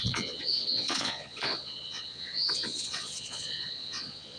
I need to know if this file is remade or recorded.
remade